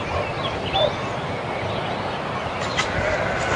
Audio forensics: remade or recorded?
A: recorded